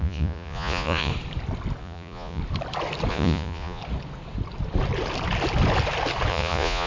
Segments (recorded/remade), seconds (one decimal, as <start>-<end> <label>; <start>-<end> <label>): 0.0-1.1 remade; 1.1-1.8 recorded; 1.8-2.4 remade; 2.4-3.1 recorded; 3.1-3.8 remade; 3.8-6.3 recorded; 6.3-6.9 remade